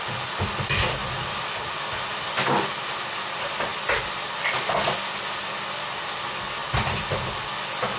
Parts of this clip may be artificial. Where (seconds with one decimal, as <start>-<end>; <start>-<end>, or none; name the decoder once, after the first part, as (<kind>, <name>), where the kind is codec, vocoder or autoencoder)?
none